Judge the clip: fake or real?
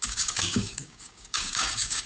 fake